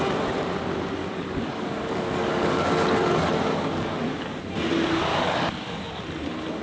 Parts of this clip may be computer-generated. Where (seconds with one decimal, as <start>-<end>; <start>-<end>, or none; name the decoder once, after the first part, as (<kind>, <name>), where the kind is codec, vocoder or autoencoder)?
1.0-2.7 (codec, DAC); 3.5-4.4; 5.1-6.0